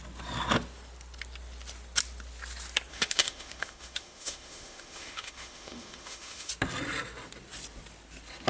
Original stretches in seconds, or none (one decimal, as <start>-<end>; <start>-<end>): 0.0-2.9; 6.5-8.5